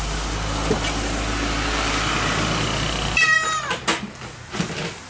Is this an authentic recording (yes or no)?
yes